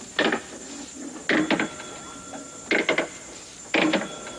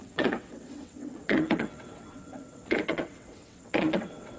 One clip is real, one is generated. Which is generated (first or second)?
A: second